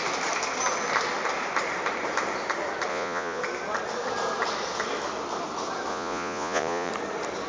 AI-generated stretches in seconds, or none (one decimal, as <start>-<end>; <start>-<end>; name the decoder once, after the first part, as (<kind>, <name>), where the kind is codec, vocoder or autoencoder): 2.9-3.4 (vocoder, Vocos); 5.9-6.9